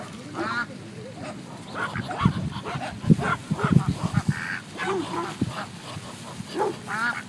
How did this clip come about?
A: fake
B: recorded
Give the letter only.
B